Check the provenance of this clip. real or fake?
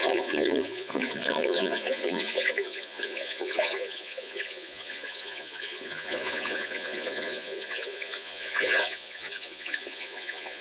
fake